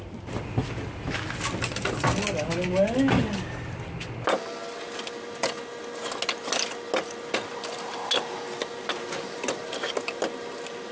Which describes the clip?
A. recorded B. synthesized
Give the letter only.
A